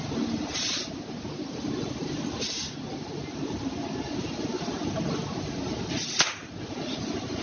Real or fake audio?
real